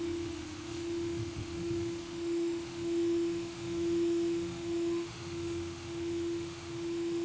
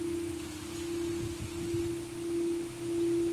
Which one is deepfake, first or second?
first